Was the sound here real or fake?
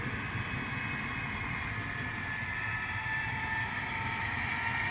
real